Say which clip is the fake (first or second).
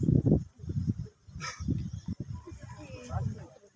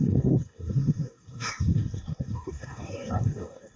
second